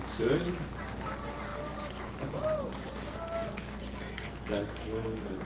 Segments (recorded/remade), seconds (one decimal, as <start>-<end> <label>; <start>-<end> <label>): 0.0-2.9 recorded; 2.9-5.5 remade